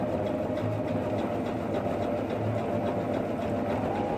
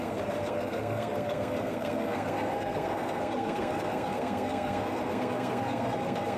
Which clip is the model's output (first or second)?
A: second